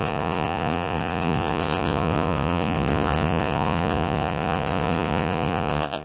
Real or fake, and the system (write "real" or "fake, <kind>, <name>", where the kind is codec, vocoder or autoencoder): fake, vocoder, Vocos